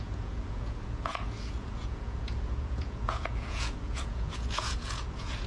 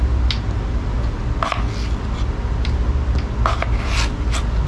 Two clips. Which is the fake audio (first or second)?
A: first